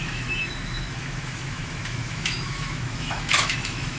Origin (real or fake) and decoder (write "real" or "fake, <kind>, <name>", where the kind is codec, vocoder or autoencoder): fake, autoencoder, DAC-VAE